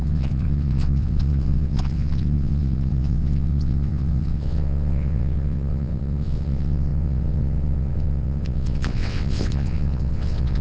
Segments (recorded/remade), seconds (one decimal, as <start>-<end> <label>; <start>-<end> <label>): 0.0-10.6 remade